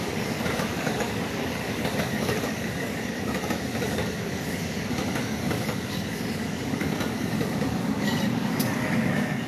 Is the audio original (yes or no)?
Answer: no